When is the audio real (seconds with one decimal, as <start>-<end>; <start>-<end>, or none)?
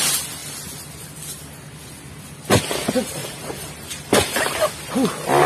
0.0-3.2; 4.7-5.5